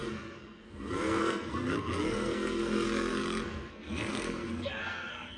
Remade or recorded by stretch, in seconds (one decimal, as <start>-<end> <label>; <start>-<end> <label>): 0.0-5.4 remade